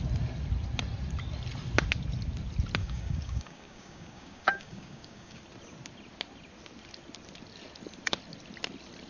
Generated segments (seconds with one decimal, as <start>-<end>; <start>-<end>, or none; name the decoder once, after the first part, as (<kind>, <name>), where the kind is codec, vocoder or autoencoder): 2.8-5.4 (codec, DAC)